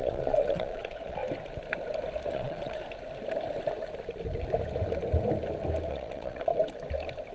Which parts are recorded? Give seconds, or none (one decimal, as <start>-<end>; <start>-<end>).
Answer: 1.2-2.3; 2.8-5.9; 6.5-7.3